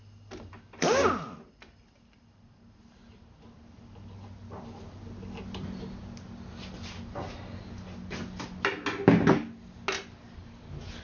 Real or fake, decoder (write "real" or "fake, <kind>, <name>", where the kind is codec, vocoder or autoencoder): real